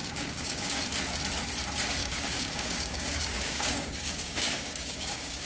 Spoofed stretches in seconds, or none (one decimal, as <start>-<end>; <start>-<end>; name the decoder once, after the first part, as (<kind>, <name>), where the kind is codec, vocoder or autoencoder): 0.0-0.8 (codec, DAC); 2.0-5.5